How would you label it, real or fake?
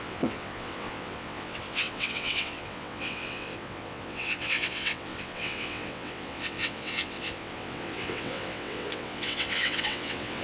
fake